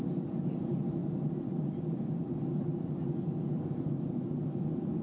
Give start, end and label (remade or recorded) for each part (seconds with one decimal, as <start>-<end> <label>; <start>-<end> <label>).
0.0-5.0 recorded